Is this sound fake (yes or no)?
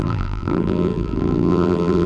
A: yes